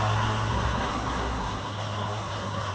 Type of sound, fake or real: fake